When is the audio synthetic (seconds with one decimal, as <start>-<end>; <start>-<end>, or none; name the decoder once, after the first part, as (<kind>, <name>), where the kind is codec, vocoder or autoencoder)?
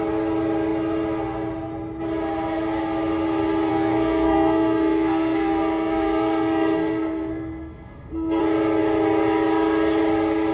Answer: 3.7-8.4 (codec, SNAC)